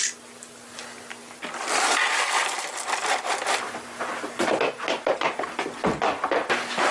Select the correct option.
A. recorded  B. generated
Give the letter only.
A